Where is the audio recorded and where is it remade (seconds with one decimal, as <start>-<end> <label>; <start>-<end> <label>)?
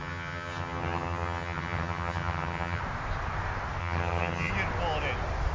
0.0-2.8 remade; 2.8-3.8 recorded; 3.8-4.5 remade; 4.5-5.5 recorded